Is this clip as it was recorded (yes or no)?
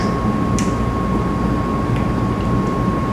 yes